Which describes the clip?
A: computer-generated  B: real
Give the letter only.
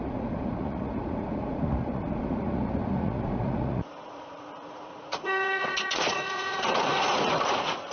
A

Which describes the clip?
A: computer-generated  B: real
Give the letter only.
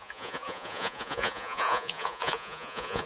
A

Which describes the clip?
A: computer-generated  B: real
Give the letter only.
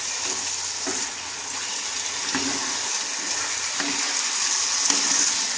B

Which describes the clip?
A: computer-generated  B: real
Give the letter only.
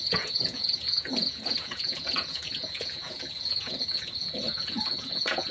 A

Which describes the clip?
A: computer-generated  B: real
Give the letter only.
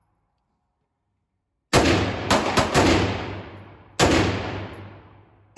B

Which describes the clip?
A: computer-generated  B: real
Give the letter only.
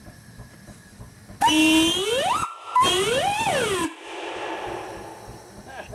B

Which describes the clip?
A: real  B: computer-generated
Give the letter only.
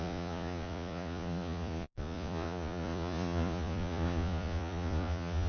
B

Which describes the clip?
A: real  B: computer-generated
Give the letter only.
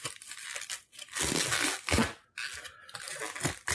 A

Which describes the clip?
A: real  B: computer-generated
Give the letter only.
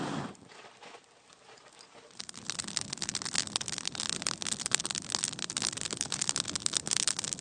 A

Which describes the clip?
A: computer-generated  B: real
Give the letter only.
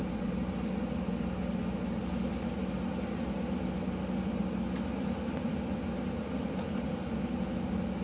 B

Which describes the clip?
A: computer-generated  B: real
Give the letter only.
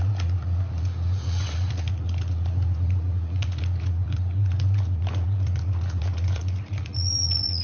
A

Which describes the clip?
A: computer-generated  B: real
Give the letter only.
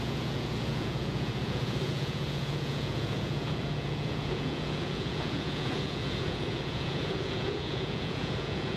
A